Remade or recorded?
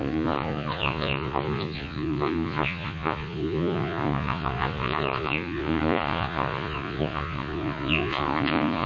remade